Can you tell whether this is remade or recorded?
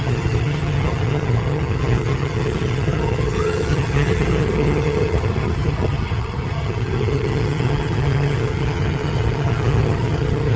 remade